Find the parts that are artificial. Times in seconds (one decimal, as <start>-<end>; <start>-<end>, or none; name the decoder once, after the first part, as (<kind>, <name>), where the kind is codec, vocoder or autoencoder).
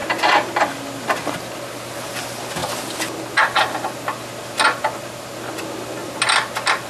none